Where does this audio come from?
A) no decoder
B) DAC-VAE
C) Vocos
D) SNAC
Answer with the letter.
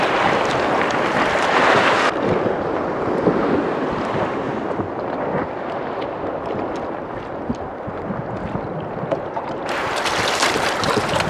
A